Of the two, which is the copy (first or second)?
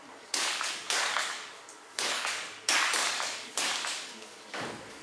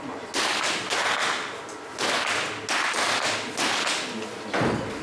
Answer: first